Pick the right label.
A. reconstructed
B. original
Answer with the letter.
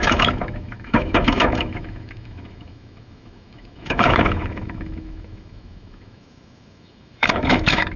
A